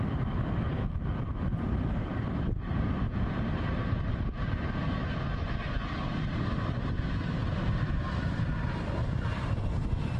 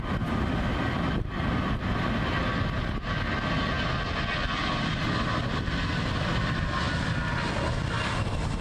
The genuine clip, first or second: second